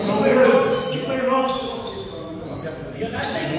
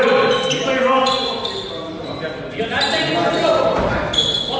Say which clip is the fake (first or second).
first